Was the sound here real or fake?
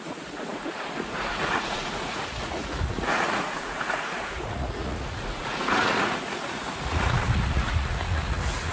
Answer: fake